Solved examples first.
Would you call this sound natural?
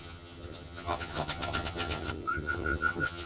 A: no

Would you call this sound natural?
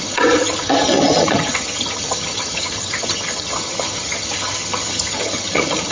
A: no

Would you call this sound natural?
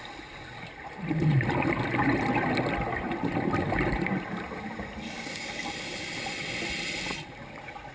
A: yes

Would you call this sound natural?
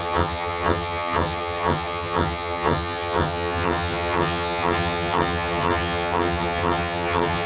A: no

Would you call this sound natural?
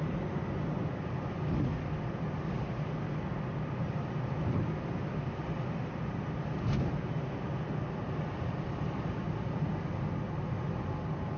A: yes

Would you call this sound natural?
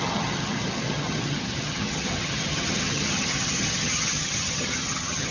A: no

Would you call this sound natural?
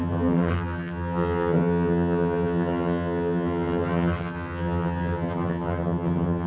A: no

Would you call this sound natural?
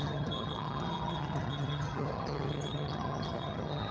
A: no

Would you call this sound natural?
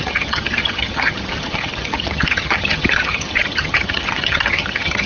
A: no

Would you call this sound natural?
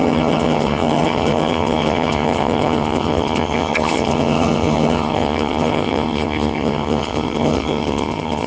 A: no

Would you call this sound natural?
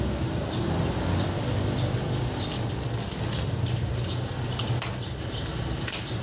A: yes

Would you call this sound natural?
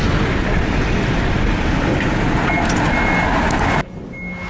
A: yes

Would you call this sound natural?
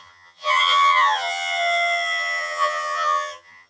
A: no